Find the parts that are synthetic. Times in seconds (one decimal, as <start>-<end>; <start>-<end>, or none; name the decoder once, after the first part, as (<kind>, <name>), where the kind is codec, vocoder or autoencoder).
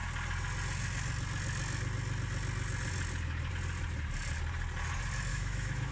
5.3-5.9 (autoencoder, DAC-VAE)